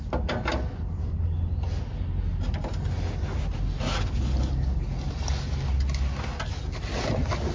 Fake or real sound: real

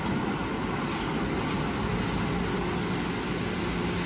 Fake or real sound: real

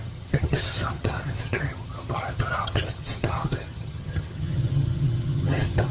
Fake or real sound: fake